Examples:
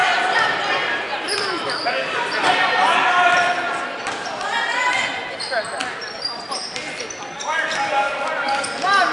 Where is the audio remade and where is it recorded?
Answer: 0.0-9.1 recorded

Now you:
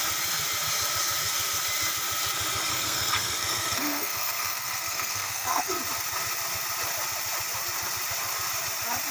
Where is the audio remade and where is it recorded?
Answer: 0.0-2.7 recorded; 2.7-5.8 remade; 5.8-9.1 recorded